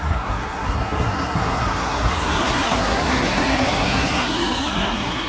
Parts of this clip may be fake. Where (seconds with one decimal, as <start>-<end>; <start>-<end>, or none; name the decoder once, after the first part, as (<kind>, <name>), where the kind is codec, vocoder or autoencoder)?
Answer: 0.0-5.3 (codec, SNAC)